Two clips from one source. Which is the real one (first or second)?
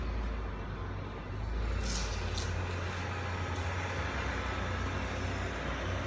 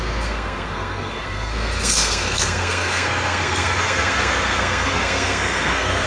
first